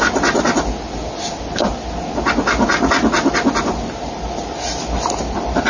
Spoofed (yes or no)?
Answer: no